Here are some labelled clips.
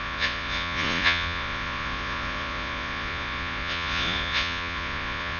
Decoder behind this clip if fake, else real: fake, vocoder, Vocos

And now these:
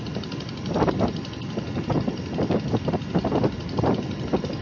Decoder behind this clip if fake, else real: real